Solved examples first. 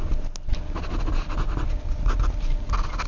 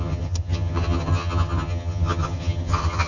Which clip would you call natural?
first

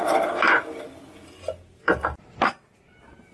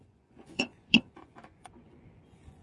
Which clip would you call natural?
first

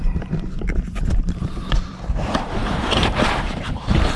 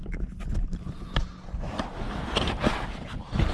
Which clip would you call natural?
second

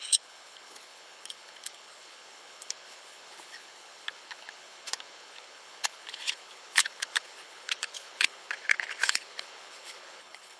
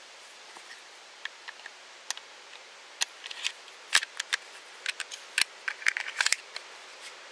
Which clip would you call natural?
second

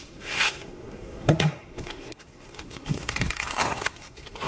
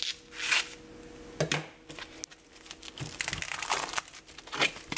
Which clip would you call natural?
second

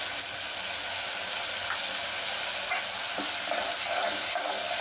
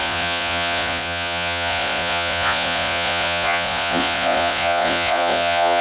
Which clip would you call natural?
first